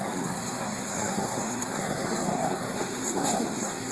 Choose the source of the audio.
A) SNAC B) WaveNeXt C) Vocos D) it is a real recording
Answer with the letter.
A